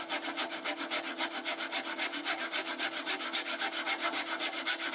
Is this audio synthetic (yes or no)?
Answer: no